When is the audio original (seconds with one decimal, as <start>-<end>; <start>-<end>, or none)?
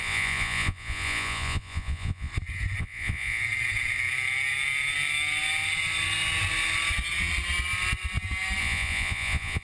2.3-2.8; 3.4-8.6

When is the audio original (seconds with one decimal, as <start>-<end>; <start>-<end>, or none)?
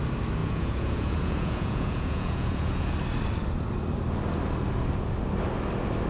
0.0-0.4; 2.9-6.1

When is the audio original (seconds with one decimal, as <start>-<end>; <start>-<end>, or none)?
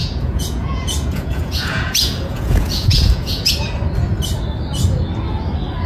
3.5-5.9